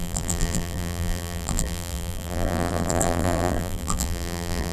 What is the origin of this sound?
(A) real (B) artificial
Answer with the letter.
B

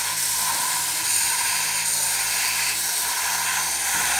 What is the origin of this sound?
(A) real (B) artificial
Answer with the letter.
A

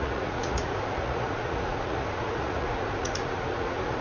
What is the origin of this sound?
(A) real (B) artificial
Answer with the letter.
B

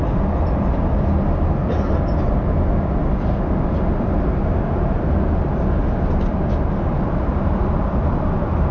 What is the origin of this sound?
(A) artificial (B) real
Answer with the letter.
B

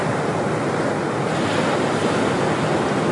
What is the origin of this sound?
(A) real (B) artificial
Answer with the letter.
A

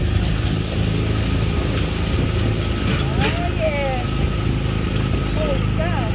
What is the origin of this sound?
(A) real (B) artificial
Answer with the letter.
A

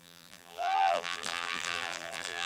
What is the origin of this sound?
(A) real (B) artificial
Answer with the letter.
B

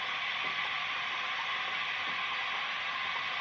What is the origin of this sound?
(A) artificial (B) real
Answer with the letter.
B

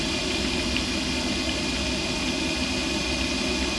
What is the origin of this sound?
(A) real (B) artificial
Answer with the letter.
A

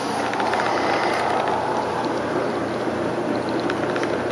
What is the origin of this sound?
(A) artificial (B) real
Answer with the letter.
B